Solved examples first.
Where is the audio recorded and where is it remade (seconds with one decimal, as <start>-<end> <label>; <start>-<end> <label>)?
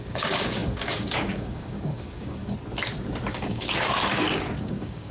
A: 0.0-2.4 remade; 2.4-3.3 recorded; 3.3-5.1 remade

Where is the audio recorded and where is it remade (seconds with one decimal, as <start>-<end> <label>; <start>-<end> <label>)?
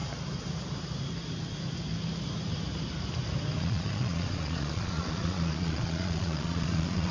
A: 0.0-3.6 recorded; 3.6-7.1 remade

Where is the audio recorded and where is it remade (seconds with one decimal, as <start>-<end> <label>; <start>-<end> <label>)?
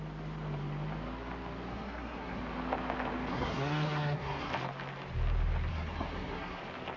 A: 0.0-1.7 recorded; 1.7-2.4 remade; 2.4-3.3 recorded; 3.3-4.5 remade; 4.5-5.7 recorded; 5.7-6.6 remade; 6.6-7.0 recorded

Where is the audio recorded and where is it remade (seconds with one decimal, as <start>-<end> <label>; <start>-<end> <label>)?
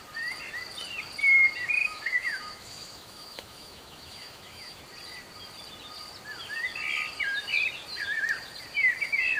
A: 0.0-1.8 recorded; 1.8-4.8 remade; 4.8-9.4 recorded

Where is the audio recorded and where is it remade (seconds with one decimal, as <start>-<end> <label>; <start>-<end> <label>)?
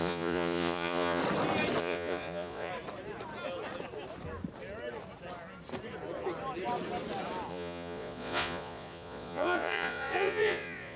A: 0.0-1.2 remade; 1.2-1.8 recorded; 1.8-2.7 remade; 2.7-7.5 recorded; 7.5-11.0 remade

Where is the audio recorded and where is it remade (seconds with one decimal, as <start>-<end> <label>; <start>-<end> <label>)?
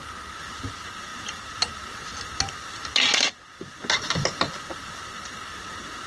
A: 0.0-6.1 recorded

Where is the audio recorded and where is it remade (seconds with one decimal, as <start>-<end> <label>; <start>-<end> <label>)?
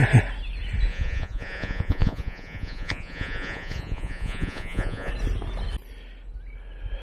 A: 0.0-0.9 recorded; 0.9-5.1 remade; 5.1-7.0 recorded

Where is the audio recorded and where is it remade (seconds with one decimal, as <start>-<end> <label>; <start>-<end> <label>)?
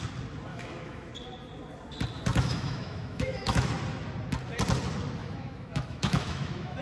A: 0.0-0.5 recorded; 0.5-1.1 remade; 1.1-2.3 recorded; 2.3-3.7 remade; 3.7-5.2 recorded; 5.2-6.8 remade